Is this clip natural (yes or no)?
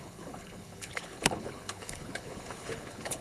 no